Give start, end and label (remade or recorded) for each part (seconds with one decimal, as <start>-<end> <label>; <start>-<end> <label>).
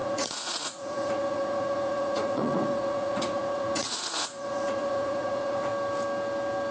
0.0-5.7 remade; 5.7-6.7 recorded